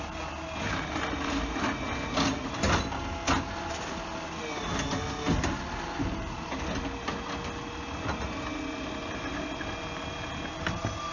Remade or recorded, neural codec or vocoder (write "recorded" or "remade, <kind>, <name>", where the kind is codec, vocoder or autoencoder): recorded